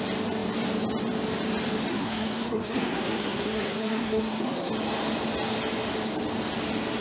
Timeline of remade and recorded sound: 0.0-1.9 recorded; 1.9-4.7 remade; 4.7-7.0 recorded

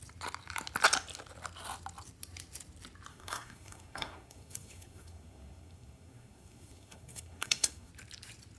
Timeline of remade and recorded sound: 0.0-3.1 recorded; 3.1-7.9 remade; 7.9-8.6 recorded

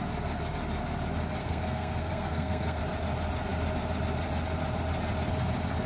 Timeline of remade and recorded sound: 0.0-1.4 recorded; 1.4-2.8 remade; 2.8-5.9 recorded

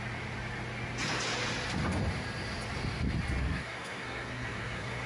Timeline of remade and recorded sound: 0.0-3.4 recorded; 3.4-5.1 remade

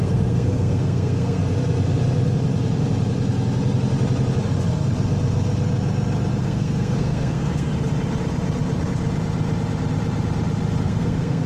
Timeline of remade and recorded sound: 0.0-1.4 remade; 1.4-6.4 recorded; 6.4-7.7 remade; 7.7-10.8 recorded; 10.8-11.5 remade

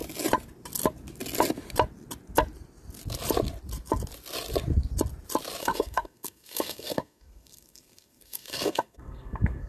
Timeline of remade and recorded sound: 0.0-5.6 recorded; 5.6-9.7 remade